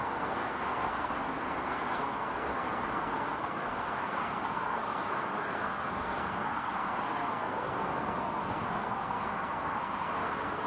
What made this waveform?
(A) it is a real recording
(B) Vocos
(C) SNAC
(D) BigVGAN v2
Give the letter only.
C